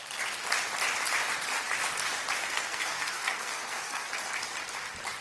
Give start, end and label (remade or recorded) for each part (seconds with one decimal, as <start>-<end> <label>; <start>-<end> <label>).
0.0-2.4 recorded; 2.4-4.1 remade; 4.1-5.2 recorded